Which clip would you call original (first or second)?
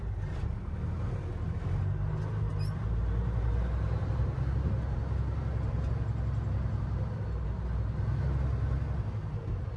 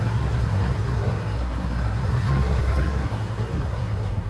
first